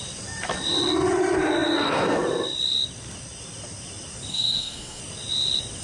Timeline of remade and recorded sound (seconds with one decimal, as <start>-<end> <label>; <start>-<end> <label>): 0.0-4.3 recorded; 4.3-5.0 remade; 5.0-5.8 recorded